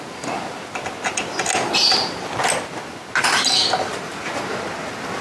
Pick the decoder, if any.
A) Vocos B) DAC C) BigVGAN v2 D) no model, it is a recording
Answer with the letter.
D